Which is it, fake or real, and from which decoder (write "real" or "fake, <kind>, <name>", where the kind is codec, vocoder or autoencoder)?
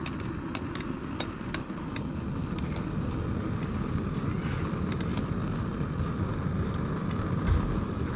real